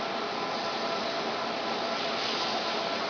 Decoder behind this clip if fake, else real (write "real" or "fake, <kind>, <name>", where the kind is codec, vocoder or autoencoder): real